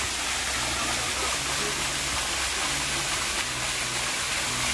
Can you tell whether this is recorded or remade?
recorded